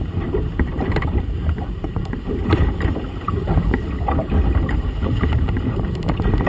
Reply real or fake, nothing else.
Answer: fake